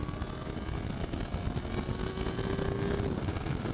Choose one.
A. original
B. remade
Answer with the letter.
A